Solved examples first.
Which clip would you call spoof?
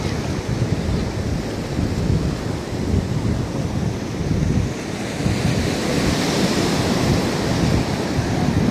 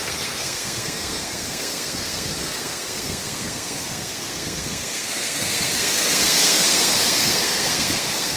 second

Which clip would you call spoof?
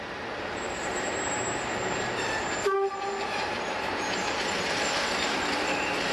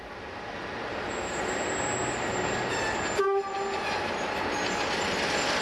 first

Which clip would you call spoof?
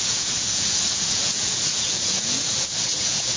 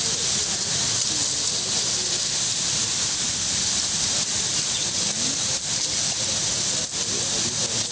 first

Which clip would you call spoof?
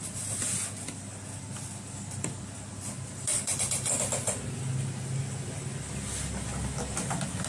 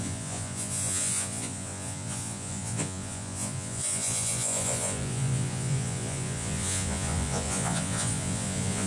second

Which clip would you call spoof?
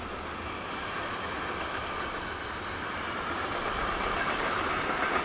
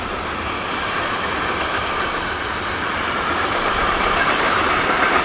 second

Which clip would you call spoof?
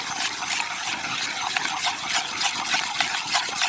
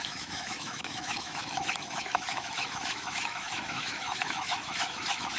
second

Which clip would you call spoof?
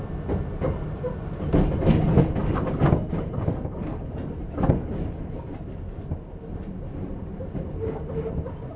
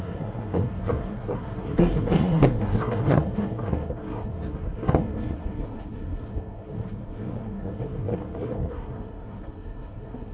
second